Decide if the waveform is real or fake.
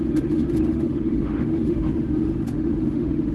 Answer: fake